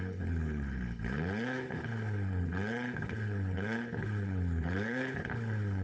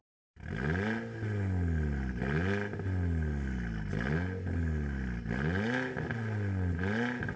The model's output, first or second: first